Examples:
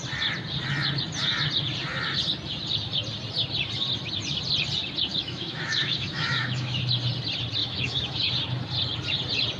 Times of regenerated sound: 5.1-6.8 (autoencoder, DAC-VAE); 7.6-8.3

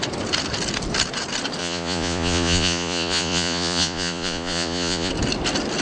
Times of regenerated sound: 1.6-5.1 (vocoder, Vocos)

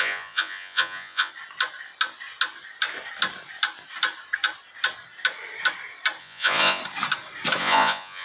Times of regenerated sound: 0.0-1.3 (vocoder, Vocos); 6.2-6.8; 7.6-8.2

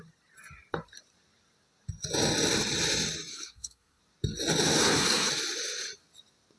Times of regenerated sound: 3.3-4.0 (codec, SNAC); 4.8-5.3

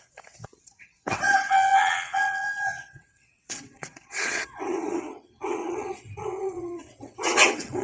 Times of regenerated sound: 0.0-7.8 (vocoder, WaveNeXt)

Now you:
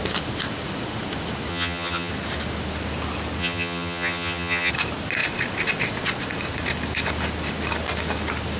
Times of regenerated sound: 1.5-2.1 (vocoder, HiFi-GAN); 3.4-4.7

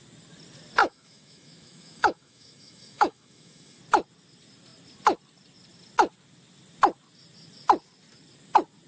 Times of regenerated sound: 0.8-3.8 (autoencoder, DAC-VAE)